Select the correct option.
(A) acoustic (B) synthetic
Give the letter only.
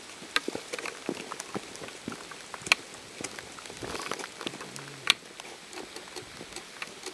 A